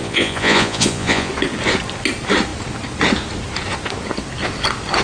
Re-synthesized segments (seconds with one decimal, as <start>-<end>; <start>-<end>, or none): 0.0-1.3